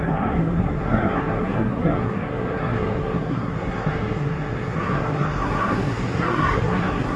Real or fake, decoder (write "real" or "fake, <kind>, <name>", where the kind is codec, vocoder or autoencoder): fake, codec, SNAC